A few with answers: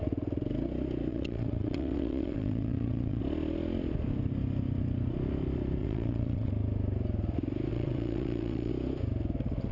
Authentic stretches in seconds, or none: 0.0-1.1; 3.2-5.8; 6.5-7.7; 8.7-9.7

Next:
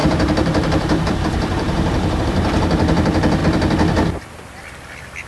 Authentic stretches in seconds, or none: 3.4-5.3

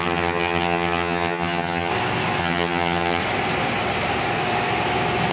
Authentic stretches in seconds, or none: 1.9-2.4; 3.2-5.3

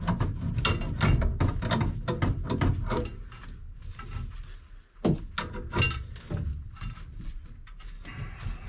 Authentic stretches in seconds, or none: 0.0-8.7

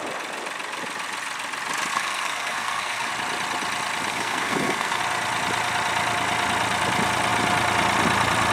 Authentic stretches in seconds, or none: 0.0-1.9; 3.1-4.1; 5.0-8.5

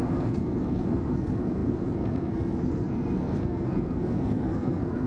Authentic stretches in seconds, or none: none

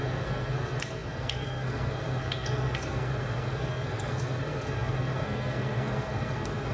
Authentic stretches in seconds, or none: none